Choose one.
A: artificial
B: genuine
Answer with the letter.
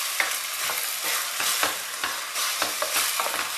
B